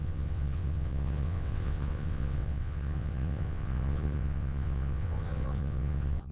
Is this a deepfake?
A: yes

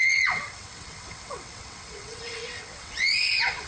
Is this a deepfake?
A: yes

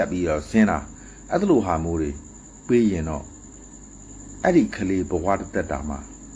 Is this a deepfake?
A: no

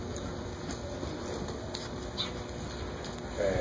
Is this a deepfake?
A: no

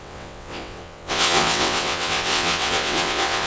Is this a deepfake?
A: yes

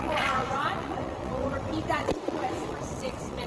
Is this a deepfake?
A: yes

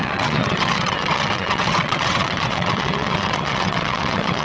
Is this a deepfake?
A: yes